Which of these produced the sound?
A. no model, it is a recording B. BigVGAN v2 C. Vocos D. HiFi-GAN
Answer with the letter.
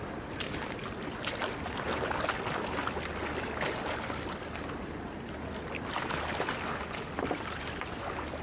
A